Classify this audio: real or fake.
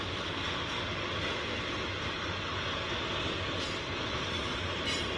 real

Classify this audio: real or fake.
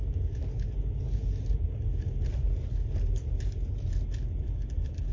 real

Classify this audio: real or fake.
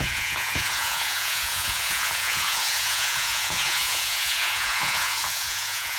fake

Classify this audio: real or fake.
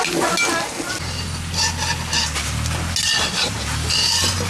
real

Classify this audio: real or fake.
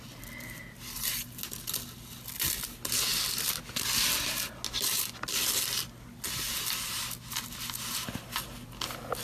real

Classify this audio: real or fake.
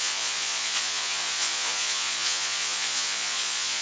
fake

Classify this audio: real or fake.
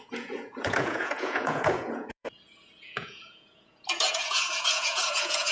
fake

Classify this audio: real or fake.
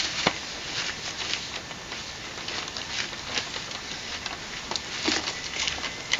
real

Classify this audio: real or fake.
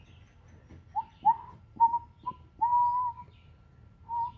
real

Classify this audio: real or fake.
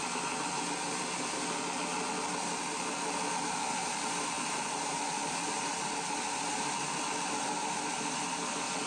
real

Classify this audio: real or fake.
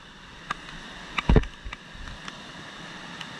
real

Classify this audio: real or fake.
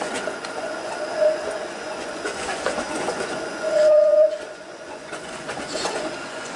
fake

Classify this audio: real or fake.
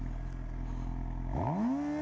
real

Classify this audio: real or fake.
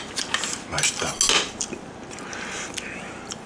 real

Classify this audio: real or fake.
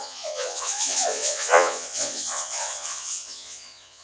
fake